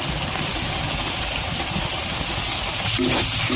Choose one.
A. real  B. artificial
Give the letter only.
A